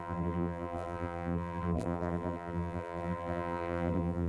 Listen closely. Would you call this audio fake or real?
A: fake